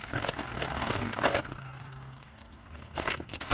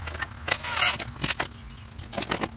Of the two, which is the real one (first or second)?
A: second